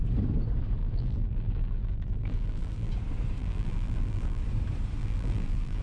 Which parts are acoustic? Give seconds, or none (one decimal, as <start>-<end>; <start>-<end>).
0.0-0.8; 2.9-3.4; 4.4-5.0